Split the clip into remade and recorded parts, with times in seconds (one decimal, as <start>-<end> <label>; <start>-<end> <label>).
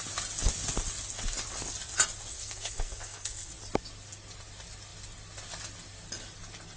0.0-2.3 recorded; 2.3-3.5 remade; 3.5-6.8 recorded